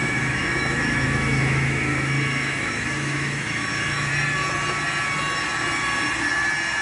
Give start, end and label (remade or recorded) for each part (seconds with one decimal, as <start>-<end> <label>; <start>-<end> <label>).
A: 0.0-4.1 remade; 4.1-6.8 recorded